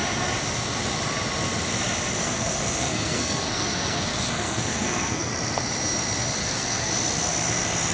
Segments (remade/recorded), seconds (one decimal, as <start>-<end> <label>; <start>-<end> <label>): 0.0-2.2 recorded; 2.2-5.3 remade; 5.3-6.4 recorded; 6.4-6.9 remade; 6.9-7.9 recorded